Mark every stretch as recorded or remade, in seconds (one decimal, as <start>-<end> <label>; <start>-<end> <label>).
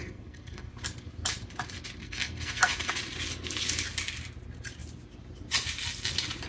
0.0-0.7 remade; 0.7-2.0 recorded; 2.0-2.9 remade; 2.9-6.5 recorded